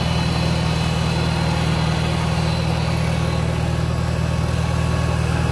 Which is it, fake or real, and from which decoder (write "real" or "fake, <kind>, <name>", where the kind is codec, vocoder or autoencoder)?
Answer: real